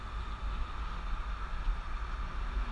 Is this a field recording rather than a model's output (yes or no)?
yes